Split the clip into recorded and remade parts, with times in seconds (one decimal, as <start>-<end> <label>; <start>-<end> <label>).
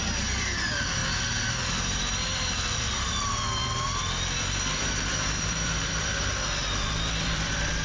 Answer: 0.0-1.0 remade; 1.0-1.5 recorded; 1.5-7.8 remade